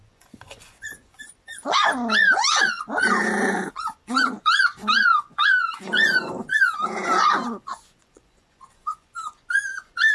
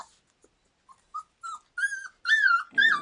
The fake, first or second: first